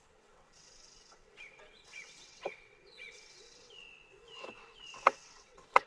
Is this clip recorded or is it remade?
remade